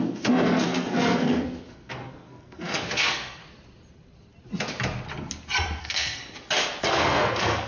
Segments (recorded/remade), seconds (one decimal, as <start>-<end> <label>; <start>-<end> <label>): 0.0-3.4 remade; 3.4-5.8 recorded; 5.8-6.2 remade; 6.2-6.9 recorded; 6.9-7.7 remade

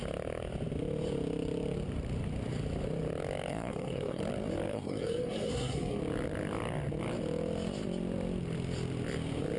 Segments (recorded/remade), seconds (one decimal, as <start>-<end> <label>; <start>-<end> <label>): 0.0-3.5 recorded; 3.5-4.2 remade; 4.2-4.7 recorded; 4.7-6.0 remade; 6.0-9.6 recorded